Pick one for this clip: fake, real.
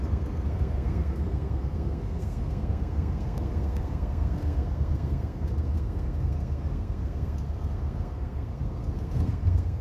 fake